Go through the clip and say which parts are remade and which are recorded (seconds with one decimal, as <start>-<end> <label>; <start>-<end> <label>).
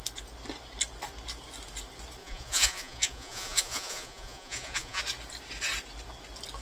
0.0-2.2 recorded; 2.2-5.0 remade; 5.0-6.6 recorded